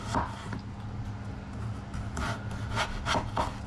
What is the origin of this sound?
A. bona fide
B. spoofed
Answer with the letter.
A